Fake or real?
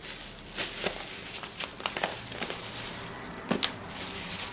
real